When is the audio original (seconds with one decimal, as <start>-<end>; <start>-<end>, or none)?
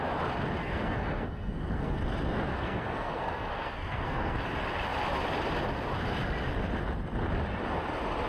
0.0-0.6; 2.0-2.5; 4.4-8.3